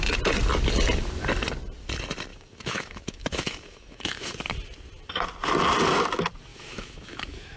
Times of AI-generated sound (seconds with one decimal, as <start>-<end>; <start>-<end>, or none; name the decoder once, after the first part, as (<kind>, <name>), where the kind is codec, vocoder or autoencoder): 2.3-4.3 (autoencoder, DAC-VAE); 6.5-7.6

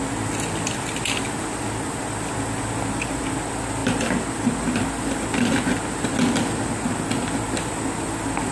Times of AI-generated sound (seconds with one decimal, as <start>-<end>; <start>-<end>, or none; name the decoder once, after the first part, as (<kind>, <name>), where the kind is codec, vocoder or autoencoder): none

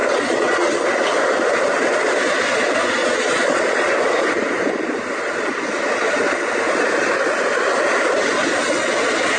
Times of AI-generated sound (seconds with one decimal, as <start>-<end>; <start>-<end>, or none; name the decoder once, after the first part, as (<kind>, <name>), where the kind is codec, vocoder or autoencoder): 0.0-0.7 (vocoder, Vocos); 3.0-3.9

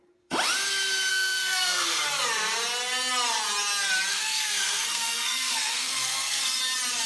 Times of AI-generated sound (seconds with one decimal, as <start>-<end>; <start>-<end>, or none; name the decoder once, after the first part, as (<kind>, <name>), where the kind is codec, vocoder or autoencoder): 1.1-2.0 (codec, SNAC); 4.1-6.6

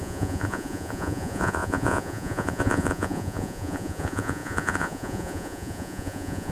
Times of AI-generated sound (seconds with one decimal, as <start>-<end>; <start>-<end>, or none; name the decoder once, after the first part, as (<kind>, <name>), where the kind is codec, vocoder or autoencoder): 0.0-6.5 (vocoder, Vocos)

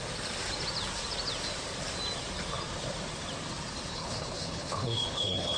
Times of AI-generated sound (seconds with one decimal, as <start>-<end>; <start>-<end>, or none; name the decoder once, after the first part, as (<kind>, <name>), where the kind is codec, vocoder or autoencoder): 3.9-5.6 (codec, HILCodec)

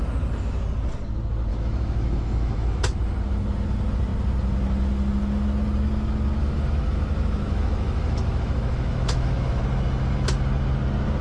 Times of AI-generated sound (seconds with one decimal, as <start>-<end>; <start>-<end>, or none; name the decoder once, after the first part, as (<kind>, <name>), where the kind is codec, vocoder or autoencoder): 1.5-2.8 (autoencoder, DAC-VAE); 6.4-9.6

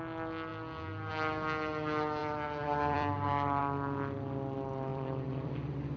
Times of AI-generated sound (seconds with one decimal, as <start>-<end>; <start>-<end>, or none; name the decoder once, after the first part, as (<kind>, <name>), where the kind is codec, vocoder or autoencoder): 2.2-3.6 (vocoder, BigVGAN v2); 4.9-6.0